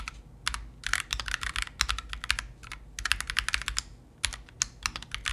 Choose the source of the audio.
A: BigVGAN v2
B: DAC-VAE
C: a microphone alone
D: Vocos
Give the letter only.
C